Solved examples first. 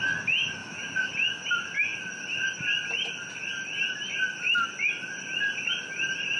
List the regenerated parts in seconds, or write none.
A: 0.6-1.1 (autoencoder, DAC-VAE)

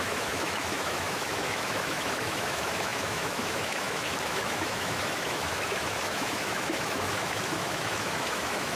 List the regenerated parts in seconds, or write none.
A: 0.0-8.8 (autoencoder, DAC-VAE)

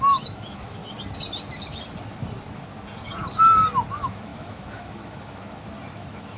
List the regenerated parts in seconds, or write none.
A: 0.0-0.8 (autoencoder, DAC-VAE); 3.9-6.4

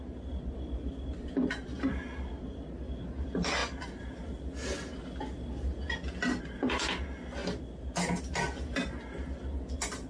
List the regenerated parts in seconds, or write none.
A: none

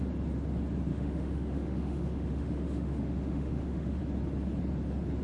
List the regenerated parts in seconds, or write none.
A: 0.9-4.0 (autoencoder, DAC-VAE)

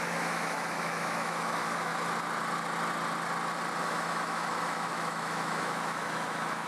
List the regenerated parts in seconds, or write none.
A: 0.0-1.9 (autoencoder, DAC-VAE); 3.8-6.7

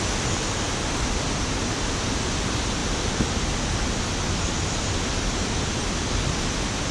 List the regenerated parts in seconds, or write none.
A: none